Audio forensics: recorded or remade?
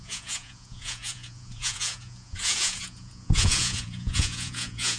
remade